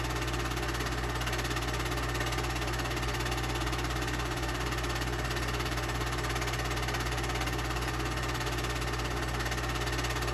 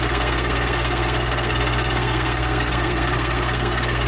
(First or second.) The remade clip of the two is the second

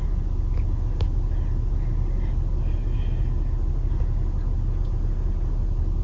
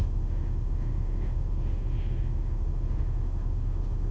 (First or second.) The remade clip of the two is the second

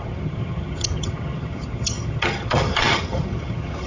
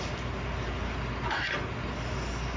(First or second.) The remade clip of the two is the first